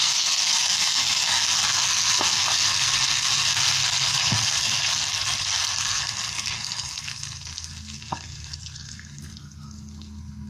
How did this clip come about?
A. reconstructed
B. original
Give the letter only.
A